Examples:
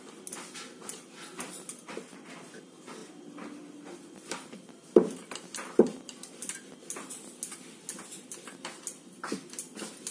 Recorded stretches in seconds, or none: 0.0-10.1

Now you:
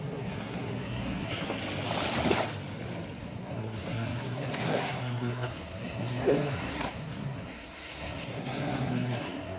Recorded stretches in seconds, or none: 1.6-3.2

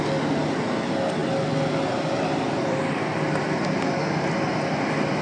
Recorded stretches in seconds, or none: 0.0-1.2; 4.3-5.2

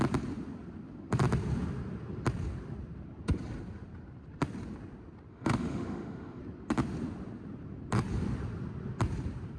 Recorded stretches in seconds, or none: 0.0-5.3; 6.4-9.6

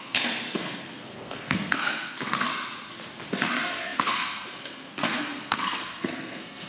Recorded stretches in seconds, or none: 2.5-3.3

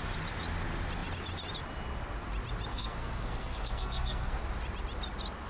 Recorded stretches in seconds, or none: 0.0-2.7; 4.4-5.5

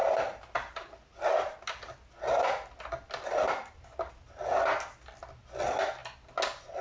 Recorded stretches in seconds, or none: 0.0-6.8